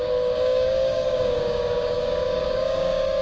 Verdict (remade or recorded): remade